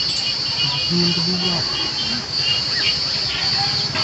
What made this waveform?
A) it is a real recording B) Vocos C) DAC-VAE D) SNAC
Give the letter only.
A